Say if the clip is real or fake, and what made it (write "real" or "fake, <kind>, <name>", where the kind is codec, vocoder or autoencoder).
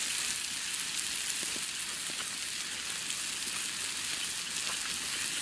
real